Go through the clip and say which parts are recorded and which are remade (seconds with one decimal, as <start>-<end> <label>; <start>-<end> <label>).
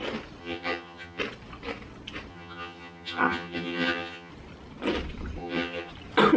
0.0-0.4 recorded; 0.4-1.2 remade; 1.2-2.3 recorded; 2.3-4.3 remade; 4.3-5.4 recorded; 5.4-5.9 remade; 5.9-6.4 recorded